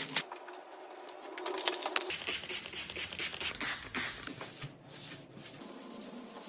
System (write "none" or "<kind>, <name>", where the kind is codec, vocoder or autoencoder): none